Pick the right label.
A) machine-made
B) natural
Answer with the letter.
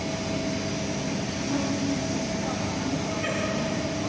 B